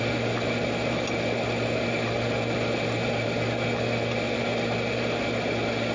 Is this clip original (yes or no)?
yes